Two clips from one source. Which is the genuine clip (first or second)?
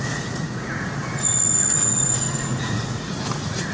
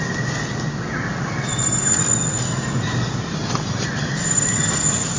second